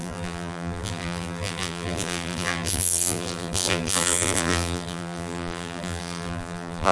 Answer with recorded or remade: remade